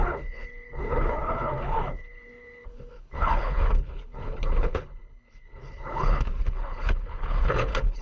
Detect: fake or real fake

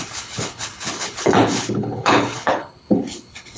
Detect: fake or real fake